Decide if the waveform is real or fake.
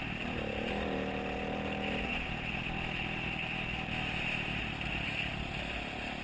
real